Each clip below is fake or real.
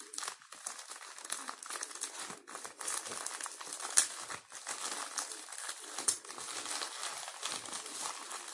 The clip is real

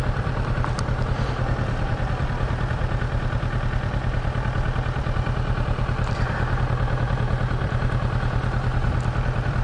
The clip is fake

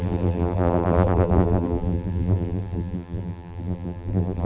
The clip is fake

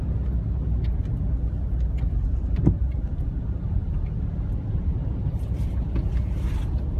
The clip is real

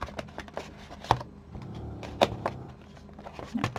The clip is real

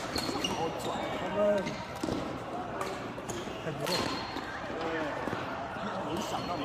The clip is fake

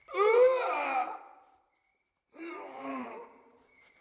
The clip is fake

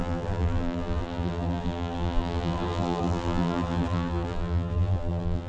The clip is fake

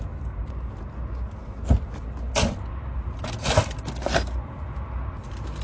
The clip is real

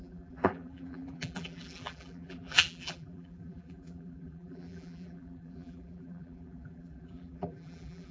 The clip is fake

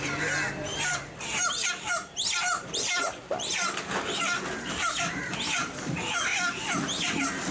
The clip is fake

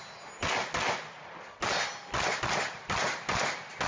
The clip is real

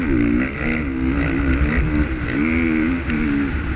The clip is real